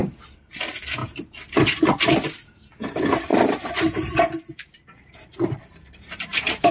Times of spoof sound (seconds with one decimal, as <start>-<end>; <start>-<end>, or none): 3.3-6.7